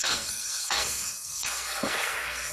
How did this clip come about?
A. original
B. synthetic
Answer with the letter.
B